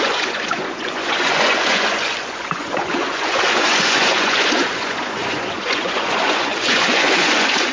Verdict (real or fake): fake